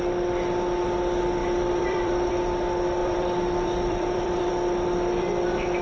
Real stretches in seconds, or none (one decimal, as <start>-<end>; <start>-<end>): 0.0-1.4; 2.3-3.0; 4.5-5.8